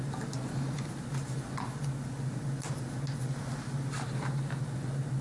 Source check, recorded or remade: recorded